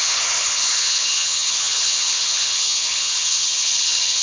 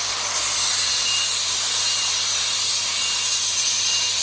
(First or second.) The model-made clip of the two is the first